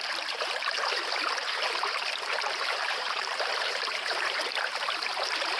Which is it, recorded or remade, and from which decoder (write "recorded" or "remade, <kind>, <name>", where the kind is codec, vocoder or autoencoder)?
remade, vocoder, BigVGAN v2